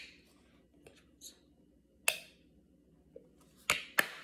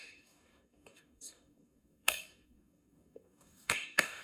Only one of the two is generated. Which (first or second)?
second